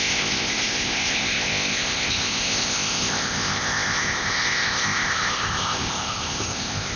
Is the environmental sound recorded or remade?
remade